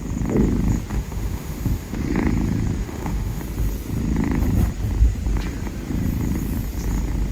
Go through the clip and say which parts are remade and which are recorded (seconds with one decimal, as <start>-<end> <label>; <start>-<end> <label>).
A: 0.0-0.9 recorded; 0.9-2.1 remade; 2.1-2.8 recorded; 2.8-3.4 remade; 3.4-7.3 recorded